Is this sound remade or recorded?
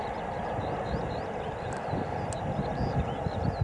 recorded